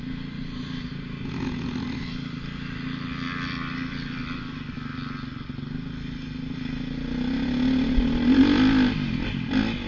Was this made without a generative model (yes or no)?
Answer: yes